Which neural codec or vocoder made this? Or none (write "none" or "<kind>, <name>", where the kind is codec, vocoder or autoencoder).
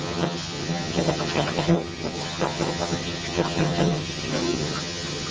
vocoder, HiFi-GAN